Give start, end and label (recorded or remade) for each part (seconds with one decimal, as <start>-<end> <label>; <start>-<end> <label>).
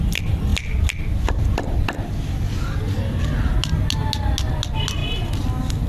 0.0-5.9 recorded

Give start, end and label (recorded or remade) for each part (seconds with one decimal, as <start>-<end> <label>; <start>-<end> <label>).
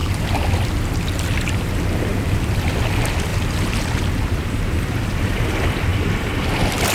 0.0-3.3 recorded; 3.3-5.2 remade; 5.2-6.9 recorded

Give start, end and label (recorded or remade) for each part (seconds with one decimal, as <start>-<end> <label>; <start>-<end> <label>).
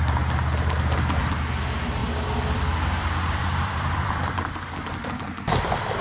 0.0-2.0 recorded; 2.0-4.7 remade; 4.7-6.0 recorded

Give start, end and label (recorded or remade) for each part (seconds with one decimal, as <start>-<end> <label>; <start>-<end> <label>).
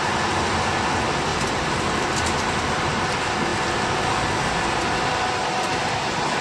0.0-1.3 recorded; 1.3-3.0 remade; 3.0-6.4 recorded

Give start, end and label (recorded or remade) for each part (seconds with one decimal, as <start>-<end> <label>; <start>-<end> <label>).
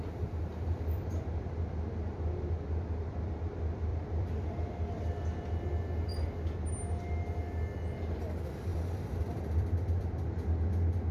0.0-0.5 recorded; 0.5-1.5 remade; 1.5-3.9 recorded; 3.9-4.6 remade; 4.6-8.7 recorded; 8.7-10.2 remade; 10.2-11.1 recorded